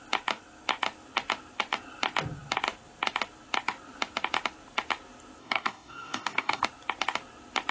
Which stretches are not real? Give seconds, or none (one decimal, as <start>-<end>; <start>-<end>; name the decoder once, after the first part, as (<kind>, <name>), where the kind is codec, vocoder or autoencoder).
5.4-6.6 (codec, DAC)